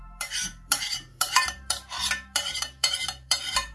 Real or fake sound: fake